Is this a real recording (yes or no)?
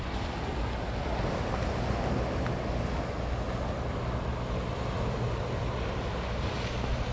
yes